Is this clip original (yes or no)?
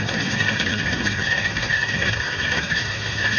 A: no